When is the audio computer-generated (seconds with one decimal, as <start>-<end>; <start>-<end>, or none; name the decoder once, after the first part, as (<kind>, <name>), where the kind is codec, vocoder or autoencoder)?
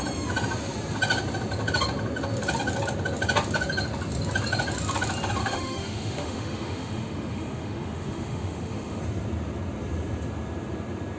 5.4-9.0 (autoencoder, DAC-VAE)